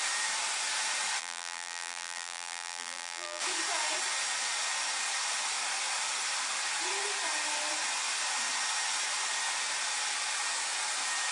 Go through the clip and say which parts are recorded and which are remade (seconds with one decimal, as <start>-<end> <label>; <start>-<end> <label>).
0.0-1.2 recorded; 1.2-3.4 remade; 3.4-11.3 recorded